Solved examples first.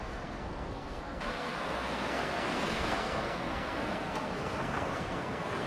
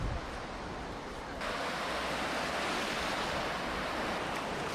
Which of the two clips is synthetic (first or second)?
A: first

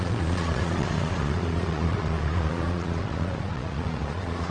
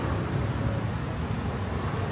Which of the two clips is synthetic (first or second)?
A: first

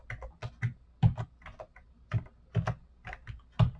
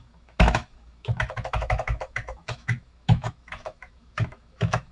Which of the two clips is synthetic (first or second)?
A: second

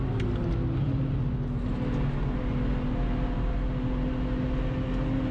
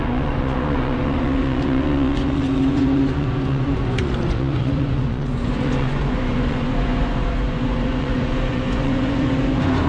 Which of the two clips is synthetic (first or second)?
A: second